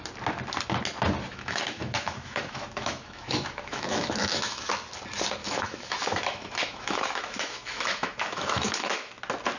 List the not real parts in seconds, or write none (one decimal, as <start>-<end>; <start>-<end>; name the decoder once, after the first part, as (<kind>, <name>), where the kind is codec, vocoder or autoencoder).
1.3-4.7 (autoencoder, DAC-VAE); 5.4-9.1